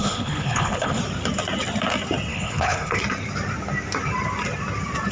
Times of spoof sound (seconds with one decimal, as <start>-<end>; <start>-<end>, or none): 0.0-1.0; 2.3-3.0